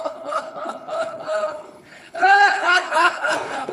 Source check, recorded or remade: remade